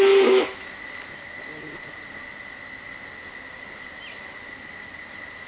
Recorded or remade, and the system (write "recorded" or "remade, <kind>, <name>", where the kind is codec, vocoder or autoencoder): recorded